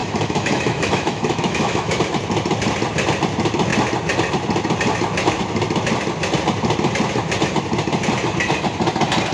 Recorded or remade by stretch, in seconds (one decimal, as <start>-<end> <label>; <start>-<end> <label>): 0.0-2.0 remade; 2.0-9.3 recorded